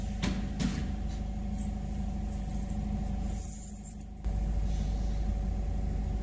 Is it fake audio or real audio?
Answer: real